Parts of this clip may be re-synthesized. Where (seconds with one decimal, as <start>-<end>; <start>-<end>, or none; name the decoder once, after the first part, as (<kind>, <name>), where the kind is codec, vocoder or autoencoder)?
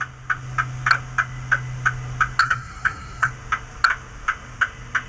2.4-3.3 (codec, SNAC)